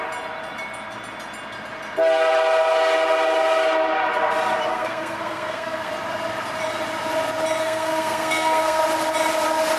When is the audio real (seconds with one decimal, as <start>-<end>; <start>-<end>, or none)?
0.0-4.7; 5.9-7.6; 8.8-9.8